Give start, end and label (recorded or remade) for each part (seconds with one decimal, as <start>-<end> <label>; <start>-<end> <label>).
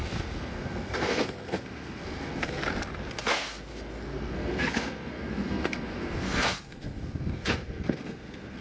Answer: 0.0-2.7 remade; 2.7-3.2 recorded; 3.2-8.6 remade